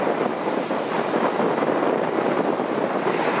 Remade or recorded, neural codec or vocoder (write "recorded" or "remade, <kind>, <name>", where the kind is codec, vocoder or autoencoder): recorded